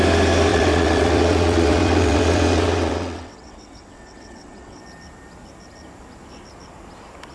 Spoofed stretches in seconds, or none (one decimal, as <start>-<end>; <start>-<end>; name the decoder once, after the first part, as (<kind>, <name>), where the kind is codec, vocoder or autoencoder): 0.5-4.8 (vocoder, WaveNeXt)